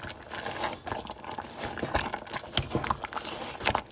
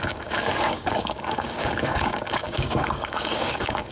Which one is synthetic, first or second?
second